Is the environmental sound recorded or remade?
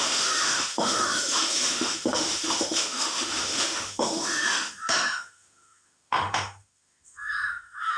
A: remade